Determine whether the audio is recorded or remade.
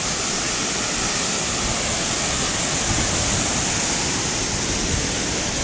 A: recorded